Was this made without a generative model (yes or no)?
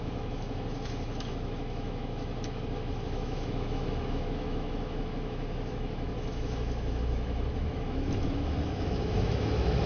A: no